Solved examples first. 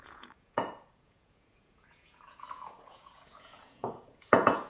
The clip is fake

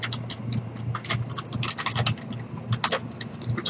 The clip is real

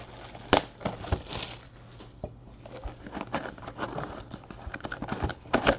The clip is real